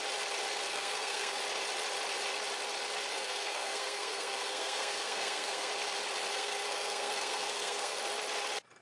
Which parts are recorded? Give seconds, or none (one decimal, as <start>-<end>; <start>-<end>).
0.0-0.7; 1.4-3.1; 5.7-6.3; 8.0-8.8